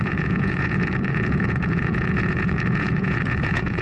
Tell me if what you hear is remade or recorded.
remade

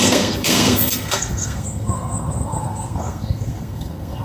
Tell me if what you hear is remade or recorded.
remade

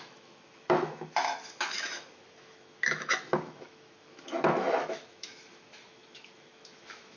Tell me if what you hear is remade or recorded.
remade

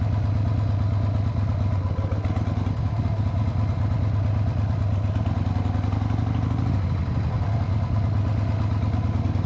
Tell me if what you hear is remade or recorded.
recorded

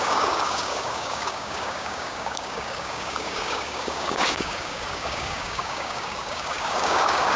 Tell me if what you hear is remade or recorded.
remade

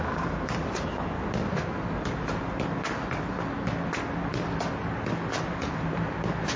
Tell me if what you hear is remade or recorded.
recorded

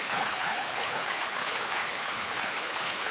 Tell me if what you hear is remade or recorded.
remade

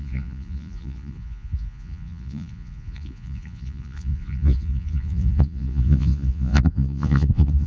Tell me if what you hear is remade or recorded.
remade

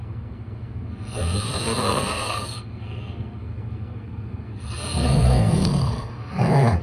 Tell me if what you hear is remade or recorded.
remade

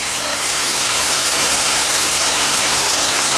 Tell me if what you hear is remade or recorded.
remade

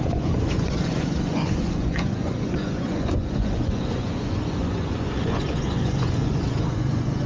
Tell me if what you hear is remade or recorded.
remade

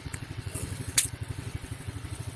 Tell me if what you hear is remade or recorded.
remade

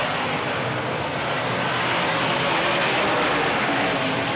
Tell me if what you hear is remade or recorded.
recorded